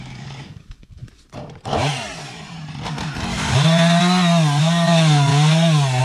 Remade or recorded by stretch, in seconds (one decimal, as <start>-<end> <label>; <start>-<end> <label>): 0.0-1.0 remade; 1.0-4.6 recorded; 4.6-5.3 remade; 5.3-6.0 recorded